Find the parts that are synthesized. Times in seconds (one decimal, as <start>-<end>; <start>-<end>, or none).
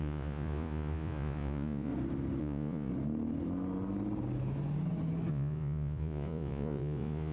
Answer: 0.0-1.9; 2.4-2.9; 5.3-7.3